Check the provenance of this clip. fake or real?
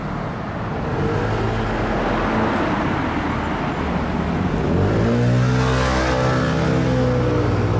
real